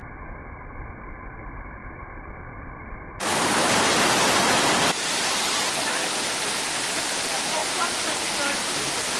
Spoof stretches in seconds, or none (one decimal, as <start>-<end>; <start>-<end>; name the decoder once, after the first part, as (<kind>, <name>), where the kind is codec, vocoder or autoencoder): 1.3-7.6 (vocoder, BigVGAN v2); 8.3-9.2